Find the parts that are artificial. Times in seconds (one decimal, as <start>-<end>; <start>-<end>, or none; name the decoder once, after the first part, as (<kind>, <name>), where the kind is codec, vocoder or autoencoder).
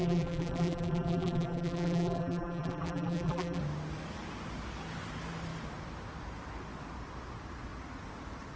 0.0-3.6 (vocoder, BigVGAN v2)